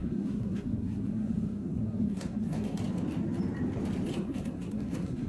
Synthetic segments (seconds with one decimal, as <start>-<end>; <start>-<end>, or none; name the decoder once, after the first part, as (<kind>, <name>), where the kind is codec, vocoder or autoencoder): 0.0-2.8 (codec, SNAC); 4.1-5.3